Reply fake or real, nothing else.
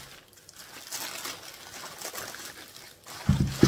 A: real